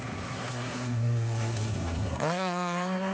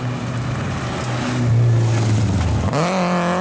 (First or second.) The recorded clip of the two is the second